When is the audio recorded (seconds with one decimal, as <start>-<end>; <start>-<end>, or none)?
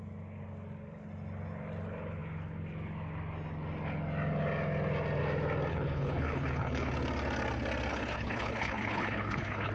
0.0-5.7; 6.9-7.9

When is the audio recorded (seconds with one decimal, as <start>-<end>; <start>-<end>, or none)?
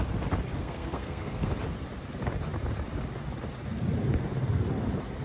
0.0-0.6; 1.5-5.2